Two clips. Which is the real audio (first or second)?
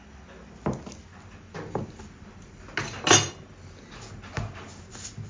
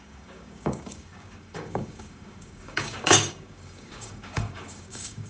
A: first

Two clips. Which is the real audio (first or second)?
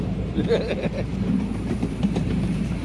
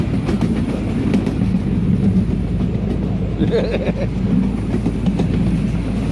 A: second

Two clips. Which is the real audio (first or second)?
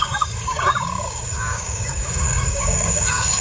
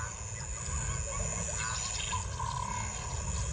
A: second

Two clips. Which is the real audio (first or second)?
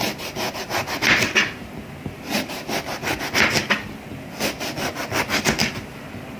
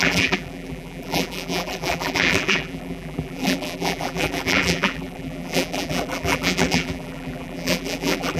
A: first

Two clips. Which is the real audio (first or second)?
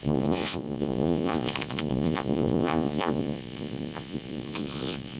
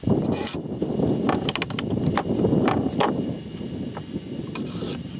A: second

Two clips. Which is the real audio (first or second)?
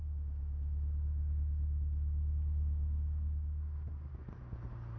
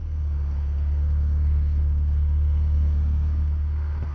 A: first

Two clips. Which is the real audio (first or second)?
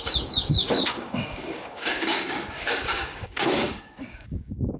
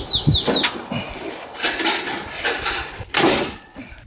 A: second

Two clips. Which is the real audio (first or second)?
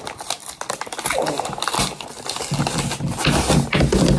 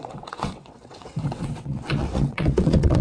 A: first